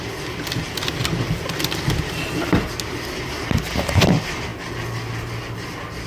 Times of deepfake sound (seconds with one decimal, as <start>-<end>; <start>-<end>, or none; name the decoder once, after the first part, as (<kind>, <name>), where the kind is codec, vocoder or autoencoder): none